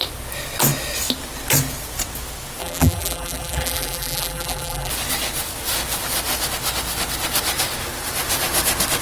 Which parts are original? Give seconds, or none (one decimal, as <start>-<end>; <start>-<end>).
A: 0.0-2.6; 4.9-9.0